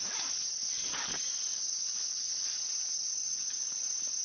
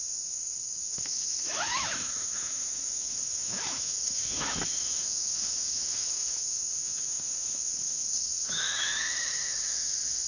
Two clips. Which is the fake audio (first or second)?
second